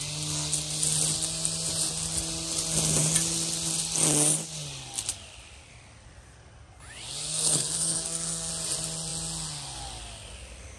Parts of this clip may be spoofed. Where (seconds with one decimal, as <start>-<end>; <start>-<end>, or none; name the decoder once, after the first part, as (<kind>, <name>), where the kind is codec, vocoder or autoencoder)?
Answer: 7.2-8.5 (codec, SNAC)